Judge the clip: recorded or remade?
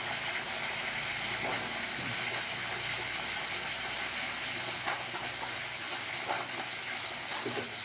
recorded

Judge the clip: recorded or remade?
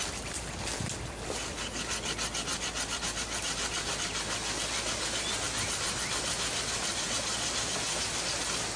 recorded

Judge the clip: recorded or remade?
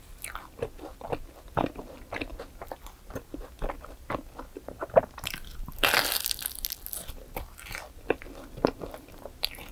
recorded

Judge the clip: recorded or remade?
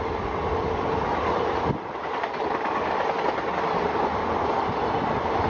recorded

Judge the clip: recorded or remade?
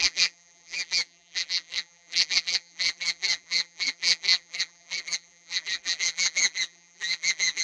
remade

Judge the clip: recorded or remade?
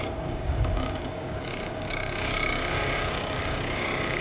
remade